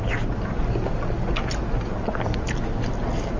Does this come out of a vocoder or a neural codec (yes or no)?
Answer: no